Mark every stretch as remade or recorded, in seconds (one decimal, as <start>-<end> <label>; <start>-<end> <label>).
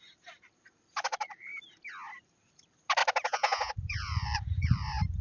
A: 0.0-1.5 remade; 1.5-2.2 recorded; 2.2-3.0 remade; 3.0-3.7 recorded; 3.7-5.2 remade